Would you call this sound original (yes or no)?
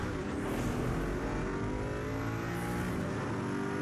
yes